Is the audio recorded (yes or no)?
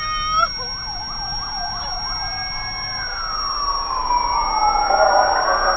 yes